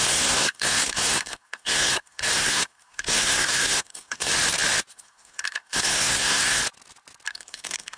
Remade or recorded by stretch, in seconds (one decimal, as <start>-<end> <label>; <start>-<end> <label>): 0.0-4.3 remade; 4.3-4.9 recorded; 4.9-6.6 remade; 6.6-7.3 recorded; 7.3-8.0 remade